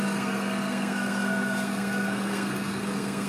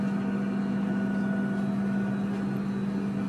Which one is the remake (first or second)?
first